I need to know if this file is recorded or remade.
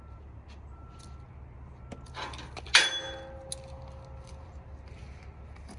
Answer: recorded